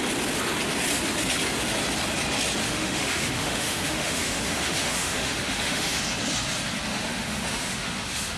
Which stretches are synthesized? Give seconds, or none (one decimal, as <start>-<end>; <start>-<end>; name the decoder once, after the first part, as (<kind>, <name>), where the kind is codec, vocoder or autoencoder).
2.6-6.0 (autoencoder, DAC-VAE); 6.9-8.4